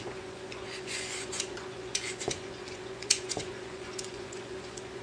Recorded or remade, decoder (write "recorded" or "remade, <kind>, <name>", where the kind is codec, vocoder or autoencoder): remade, vocoder, Vocos